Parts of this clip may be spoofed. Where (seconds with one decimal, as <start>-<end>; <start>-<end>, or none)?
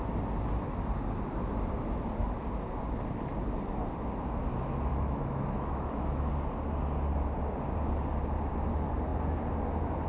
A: 4.9-6.3